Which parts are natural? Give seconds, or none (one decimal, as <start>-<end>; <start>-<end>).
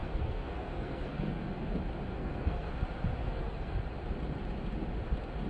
1.4-2.1; 2.7-3.2; 3.8-5.5